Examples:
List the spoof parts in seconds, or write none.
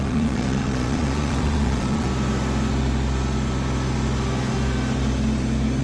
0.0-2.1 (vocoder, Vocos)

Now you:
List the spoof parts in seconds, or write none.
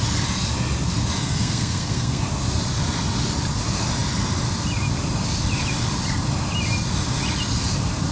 1.2-2.2 (codec, SNAC)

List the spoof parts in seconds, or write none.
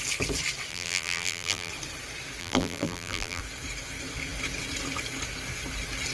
0.7-1.7 (vocoder, BigVGAN v2); 2.4-3.4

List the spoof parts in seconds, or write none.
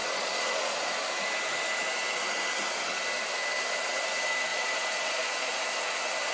0.0-0.9 (vocoder, Vocos); 4.5-5.6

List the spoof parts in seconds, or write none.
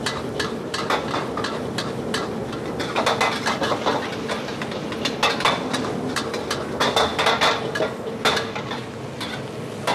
none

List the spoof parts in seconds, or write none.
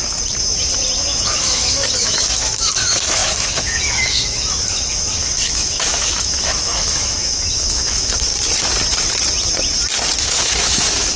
1.0-8.3 (autoencoder, DAC-VAE); 10.2-11.2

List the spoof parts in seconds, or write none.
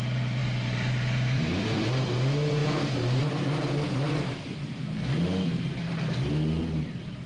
0.4-1.9 (vocoder, BigVGAN v2)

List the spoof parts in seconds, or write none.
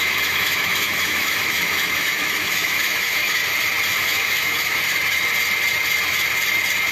0.0-3.4 (autoencoder, DAC-VAE); 3.9-4.8